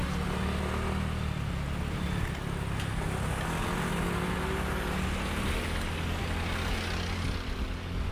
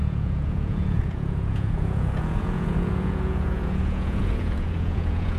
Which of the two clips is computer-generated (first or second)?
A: second